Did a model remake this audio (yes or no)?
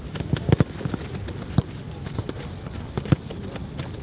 no